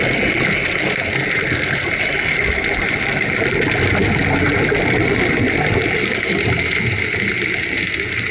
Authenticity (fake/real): real